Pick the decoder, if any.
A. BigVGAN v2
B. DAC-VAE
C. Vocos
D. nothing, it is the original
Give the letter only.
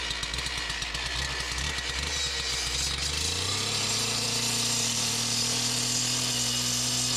D